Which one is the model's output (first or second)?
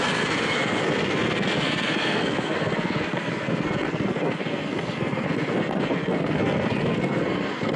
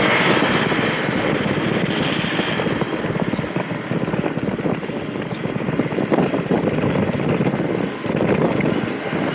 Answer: first